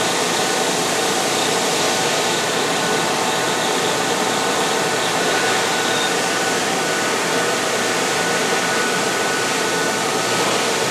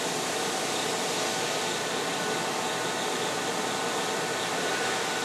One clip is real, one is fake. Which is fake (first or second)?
first